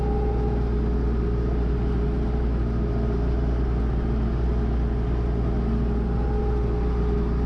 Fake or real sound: real